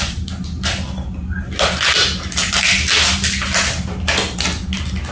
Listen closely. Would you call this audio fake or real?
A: real